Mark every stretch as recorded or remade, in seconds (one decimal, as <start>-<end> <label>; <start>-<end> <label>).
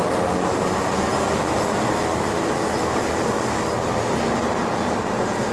0.0-5.5 recorded